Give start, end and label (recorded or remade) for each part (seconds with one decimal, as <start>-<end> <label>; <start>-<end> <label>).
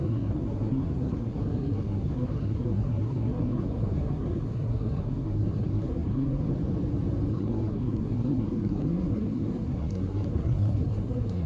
0.0-6.5 remade; 6.5-7.3 recorded; 7.3-11.5 remade